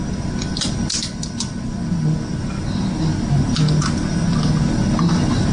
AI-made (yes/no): no